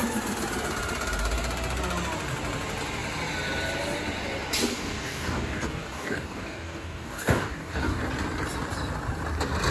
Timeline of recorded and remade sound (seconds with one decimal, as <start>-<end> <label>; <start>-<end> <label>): 0.0-4.7 recorded; 4.7-8.0 remade; 8.0-9.7 recorded